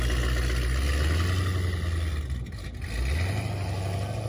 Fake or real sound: real